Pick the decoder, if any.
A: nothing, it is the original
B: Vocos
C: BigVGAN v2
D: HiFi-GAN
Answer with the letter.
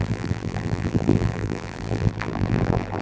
C